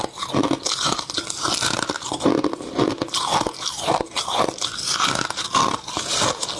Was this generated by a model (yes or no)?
no